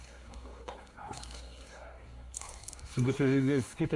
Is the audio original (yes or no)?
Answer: no